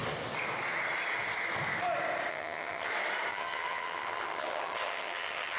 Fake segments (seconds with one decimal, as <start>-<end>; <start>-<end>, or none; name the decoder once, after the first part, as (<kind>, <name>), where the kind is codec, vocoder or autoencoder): 2.3-2.9 (vocoder, HiFi-GAN); 3.3-5.6